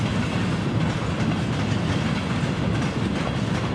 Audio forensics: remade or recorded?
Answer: recorded